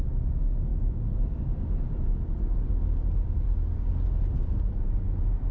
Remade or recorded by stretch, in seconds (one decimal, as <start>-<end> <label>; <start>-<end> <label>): 0.0-0.7 recorded; 0.7-2.7 remade; 2.7-5.5 recorded